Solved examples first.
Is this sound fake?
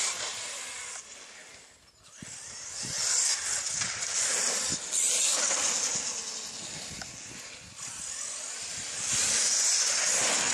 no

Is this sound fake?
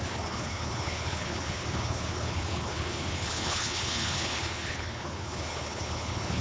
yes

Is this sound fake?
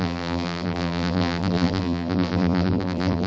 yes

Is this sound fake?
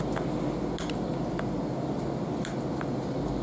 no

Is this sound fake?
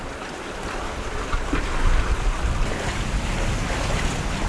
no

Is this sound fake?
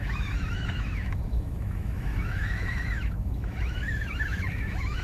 yes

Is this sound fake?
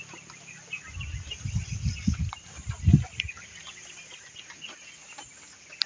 no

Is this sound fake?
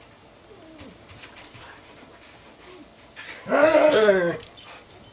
no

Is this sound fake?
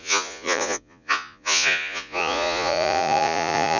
yes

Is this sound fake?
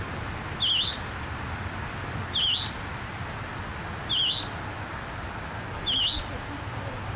no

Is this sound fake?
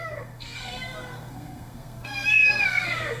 yes